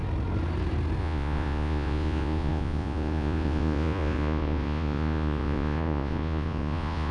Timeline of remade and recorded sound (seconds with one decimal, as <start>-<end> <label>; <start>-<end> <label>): 0.0-1.0 recorded; 1.0-7.1 remade